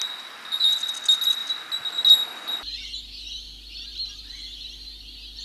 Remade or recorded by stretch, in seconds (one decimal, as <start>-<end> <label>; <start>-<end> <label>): 0.0-5.4 recorded